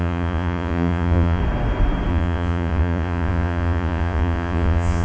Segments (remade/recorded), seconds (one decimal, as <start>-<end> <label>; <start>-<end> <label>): 0.0-1.4 remade; 1.4-2.1 recorded; 2.1-5.0 remade